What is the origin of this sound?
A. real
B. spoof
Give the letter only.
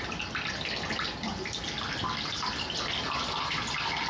A